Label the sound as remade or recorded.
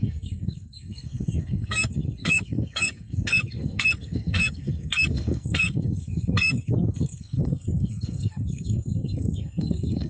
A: remade